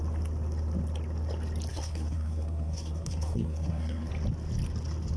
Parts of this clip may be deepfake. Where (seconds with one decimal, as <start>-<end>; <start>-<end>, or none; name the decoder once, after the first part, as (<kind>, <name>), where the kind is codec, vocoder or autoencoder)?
1.7-4.1 (codec, SNAC)